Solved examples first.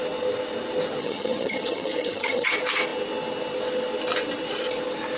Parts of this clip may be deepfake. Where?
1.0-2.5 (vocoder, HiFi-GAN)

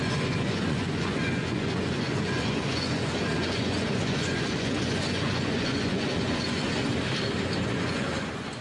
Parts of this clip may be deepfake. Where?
0.0-6.8 (vocoder, Vocos); 7.6-8.6

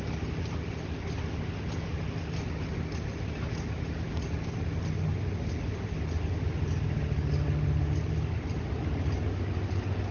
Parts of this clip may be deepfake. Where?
none

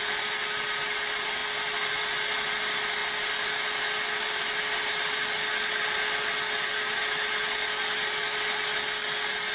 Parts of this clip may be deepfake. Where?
none

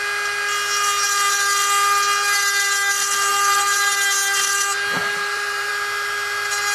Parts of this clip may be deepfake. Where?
3.3-3.9 (vocoder, BigVGAN v2); 5.0-5.7